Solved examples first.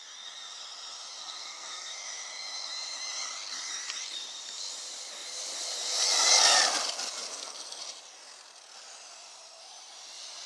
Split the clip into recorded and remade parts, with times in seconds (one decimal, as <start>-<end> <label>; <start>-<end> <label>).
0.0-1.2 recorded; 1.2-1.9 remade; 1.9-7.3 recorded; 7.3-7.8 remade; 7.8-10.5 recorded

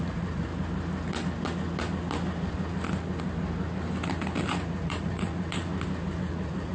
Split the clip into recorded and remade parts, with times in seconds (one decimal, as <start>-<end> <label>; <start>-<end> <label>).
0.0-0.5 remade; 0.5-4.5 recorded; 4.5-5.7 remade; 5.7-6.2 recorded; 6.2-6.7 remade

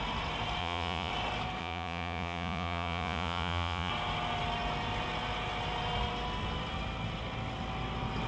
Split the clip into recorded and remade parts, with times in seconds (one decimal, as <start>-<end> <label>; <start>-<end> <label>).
0.0-0.6 recorded; 0.6-1.1 remade; 1.1-1.6 recorded; 1.6-3.9 remade; 3.9-8.3 recorded

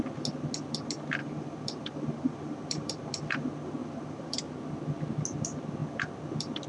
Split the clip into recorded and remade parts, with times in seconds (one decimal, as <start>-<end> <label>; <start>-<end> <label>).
0.0-1.2 recorded; 1.2-3.0 remade; 3.0-3.8 recorded; 3.8-4.4 remade; 4.4-6.7 recorded